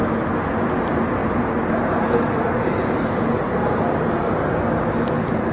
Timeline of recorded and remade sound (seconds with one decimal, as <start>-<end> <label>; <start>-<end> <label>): 0.0-0.6 remade; 0.6-1.2 recorded; 1.2-4.5 remade; 4.5-5.5 recorded